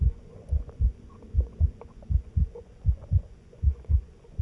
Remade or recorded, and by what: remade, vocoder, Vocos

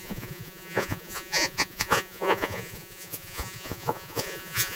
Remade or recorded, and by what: remade, vocoder, Vocos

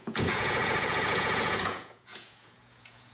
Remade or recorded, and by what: remade, vocoder, Vocos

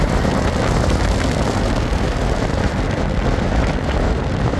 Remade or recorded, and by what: recorded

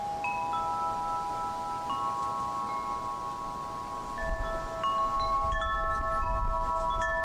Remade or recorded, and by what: recorded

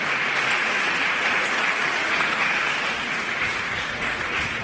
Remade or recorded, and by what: remade, vocoder, Vocos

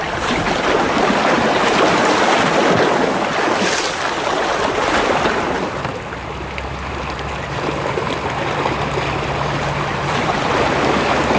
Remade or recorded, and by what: recorded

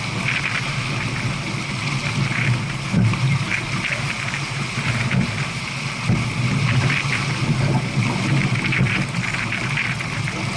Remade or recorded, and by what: recorded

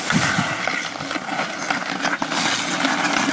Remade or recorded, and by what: recorded